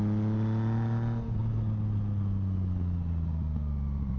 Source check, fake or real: real